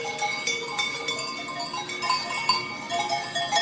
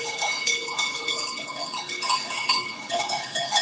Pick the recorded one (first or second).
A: first